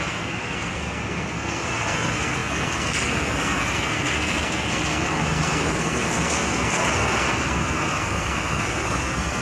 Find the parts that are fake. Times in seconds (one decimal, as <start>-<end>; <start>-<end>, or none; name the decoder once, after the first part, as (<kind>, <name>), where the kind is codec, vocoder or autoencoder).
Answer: 0.0-9.4 (codec, SNAC)